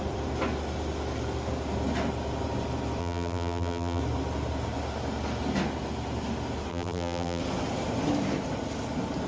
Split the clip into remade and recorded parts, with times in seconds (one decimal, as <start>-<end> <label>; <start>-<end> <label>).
0.0-3.0 recorded; 3.0-4.0 remade; 4.0-6.7 recorded; 6.7-7.4 remade; 7.4-9.3 recorded